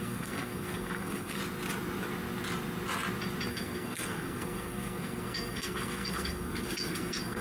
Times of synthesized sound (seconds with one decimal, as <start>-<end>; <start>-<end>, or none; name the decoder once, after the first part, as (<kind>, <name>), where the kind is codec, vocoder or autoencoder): 0.0-1.4 (codec, SNAC); 3.5-7.4

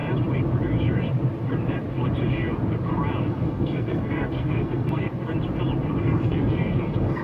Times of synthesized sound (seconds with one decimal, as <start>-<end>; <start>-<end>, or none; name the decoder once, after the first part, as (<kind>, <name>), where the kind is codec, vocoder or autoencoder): 3.2-5.1 (codec, SNAC); 6.0-7.2

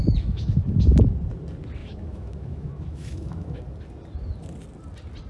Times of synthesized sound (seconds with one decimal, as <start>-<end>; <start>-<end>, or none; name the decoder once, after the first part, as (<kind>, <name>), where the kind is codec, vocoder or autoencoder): 0.0-1.0 (autoencoder, DAC-VAE); 1.8-3.6

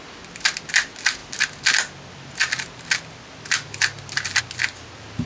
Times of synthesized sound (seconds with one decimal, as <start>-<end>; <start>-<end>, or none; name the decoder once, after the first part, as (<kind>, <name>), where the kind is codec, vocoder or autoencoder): none

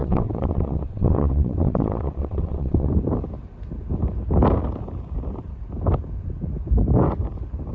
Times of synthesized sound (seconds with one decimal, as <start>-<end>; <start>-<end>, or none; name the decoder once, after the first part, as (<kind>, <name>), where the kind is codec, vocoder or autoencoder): 0.0-2.9 (vocoder, WaveNeXt)

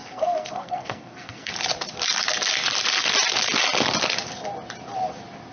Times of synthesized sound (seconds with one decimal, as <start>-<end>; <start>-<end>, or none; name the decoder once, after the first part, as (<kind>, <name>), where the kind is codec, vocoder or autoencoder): 0.0-1.5 (codec, SNAC)

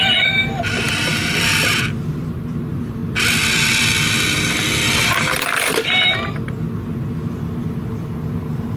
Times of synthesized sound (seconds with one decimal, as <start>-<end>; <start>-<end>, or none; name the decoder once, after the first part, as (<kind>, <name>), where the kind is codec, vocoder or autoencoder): none